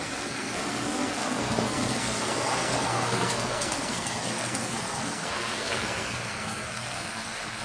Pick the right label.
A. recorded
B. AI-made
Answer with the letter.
B